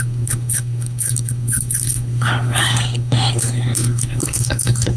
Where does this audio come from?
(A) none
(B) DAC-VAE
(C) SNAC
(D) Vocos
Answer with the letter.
C